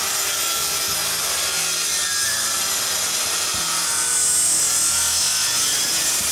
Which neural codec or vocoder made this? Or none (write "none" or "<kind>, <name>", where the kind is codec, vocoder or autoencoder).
none